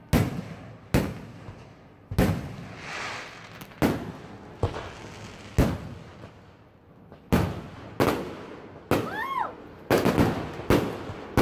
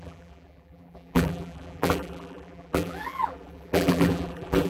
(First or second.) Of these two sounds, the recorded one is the first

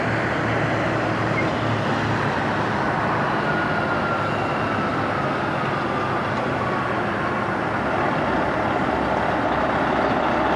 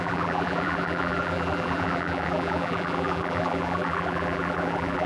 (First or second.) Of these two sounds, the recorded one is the first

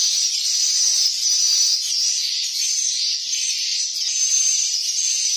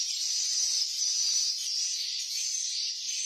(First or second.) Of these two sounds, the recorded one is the first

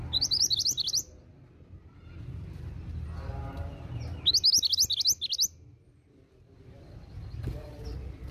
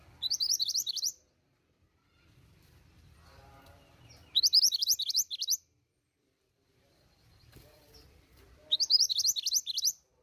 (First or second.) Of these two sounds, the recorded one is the first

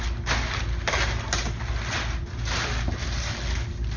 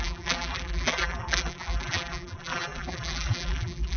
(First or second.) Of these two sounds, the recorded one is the first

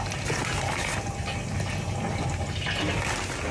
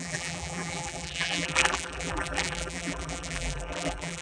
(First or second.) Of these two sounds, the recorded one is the first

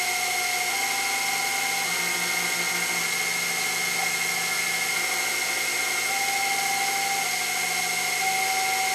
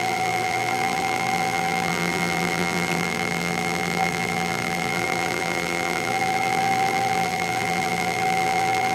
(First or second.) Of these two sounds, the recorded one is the first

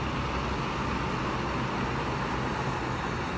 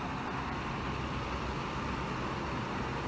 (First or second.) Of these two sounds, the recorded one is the first